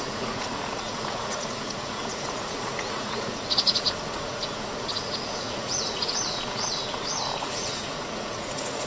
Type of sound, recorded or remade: remade